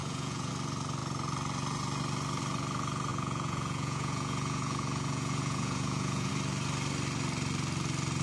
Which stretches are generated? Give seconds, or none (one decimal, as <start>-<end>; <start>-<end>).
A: 0.0-0.5; 3.1-6.3